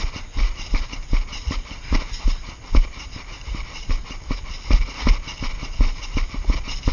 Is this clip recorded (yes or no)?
yes